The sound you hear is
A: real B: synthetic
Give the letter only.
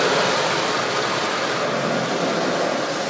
A